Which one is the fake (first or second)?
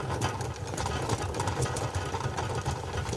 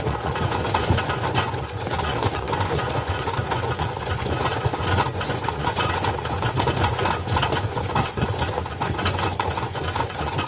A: second